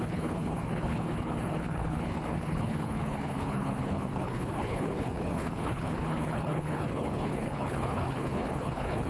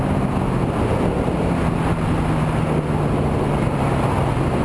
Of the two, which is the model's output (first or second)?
first